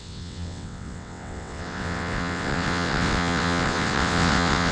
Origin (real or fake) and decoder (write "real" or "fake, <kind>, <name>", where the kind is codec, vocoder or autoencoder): fake, vocoder, WaveNeXt